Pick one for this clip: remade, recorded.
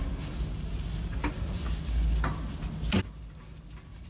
recorded